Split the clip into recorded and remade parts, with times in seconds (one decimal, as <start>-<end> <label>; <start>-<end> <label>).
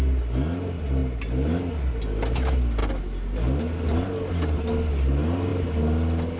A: 0.0-6.4 recorded